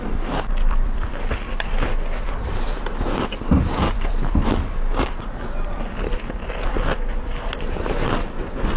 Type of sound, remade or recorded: remade